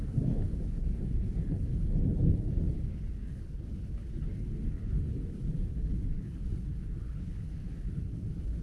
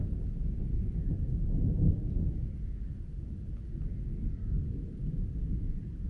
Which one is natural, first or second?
second